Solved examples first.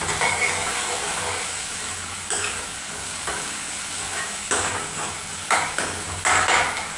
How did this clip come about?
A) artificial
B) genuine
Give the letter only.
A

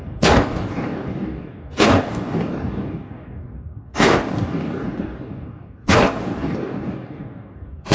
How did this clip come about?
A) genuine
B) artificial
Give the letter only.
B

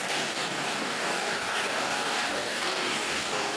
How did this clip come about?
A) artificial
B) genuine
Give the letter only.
A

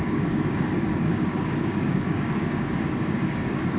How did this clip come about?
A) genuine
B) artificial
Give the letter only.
B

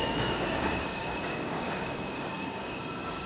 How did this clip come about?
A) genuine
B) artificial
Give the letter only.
B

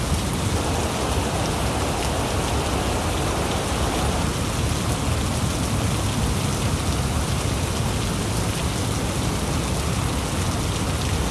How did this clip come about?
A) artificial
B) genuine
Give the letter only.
B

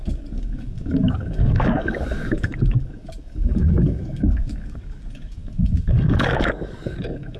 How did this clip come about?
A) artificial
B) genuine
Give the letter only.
A